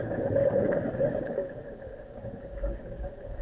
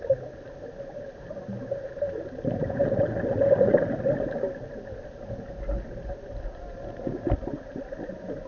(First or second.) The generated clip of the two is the first